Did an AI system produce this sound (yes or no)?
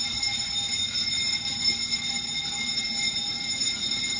no